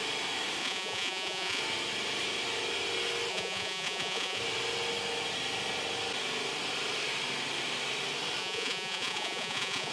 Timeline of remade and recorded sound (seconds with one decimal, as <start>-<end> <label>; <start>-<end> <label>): 0.0-0.6 recorded; 0.6-1.6 remade; 1.6-3.3 recorded; 3.3-4.4 remade; 4.4-8.4 recorded; 8.4-9.9 remade